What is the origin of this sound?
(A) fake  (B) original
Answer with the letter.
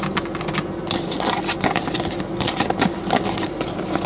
B